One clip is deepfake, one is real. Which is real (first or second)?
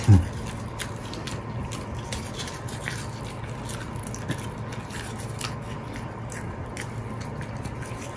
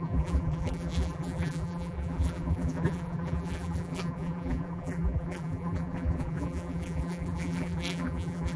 first